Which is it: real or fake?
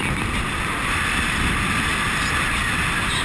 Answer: real